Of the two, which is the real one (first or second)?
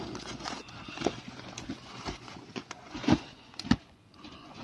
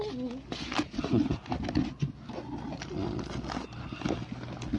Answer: second